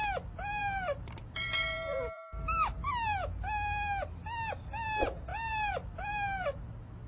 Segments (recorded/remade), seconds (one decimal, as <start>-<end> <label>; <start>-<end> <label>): 0.0-0.6 recorded; 0.6-2.7 remade; 2.7-5.3 recorded; 5.3-6.6 remade; 6.6-7.1 recorded